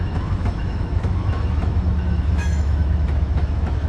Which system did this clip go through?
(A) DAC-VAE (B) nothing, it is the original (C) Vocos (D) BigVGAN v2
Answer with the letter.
A